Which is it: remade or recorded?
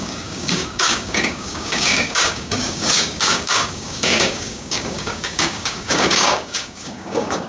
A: remade